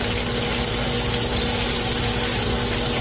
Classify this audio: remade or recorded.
recorded